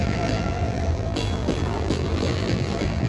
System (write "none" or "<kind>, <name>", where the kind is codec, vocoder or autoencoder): vocoder, BigVGAN v2